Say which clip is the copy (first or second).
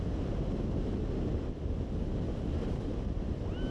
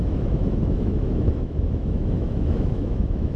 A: second